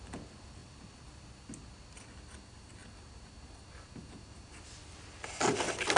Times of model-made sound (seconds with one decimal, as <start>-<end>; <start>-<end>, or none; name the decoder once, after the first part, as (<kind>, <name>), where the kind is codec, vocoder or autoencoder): none